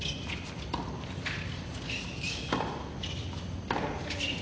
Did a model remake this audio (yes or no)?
no